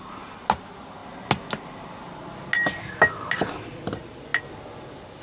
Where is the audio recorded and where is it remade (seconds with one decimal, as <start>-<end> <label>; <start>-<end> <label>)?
0.0-5.2 recorded